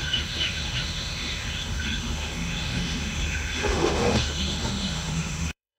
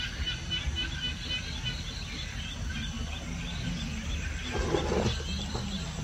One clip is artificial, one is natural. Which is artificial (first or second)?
first